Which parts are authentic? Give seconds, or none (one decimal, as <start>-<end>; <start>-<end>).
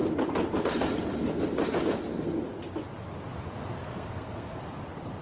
0.0-3.8; 4.6-5.2